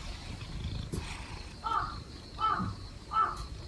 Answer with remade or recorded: recorded